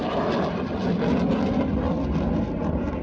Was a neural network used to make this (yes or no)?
no